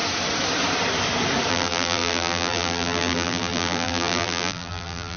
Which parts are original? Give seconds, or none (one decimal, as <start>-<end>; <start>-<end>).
0.0-1.5